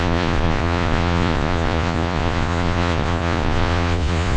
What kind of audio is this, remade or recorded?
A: remade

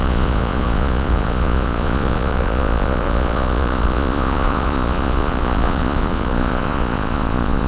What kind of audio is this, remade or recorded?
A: remade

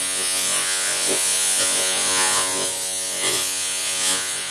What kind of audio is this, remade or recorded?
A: remade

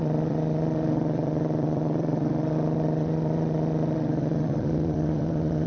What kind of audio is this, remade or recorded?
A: remade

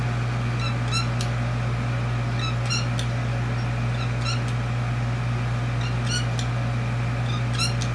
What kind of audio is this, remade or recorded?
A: recorded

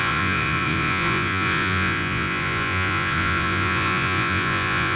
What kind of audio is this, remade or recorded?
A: remade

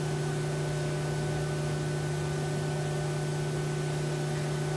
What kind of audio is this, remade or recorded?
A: recorded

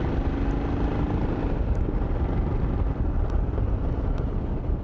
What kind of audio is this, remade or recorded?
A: recorded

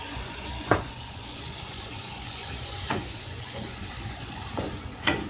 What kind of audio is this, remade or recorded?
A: remade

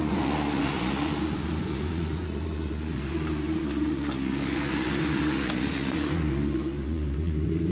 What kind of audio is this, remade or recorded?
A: remade